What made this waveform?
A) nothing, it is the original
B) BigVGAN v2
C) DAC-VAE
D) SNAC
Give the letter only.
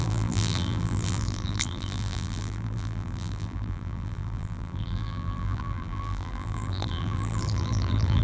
B